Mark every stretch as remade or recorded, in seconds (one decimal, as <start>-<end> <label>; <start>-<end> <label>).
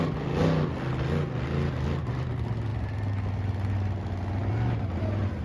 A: 0.0-5.4 recorded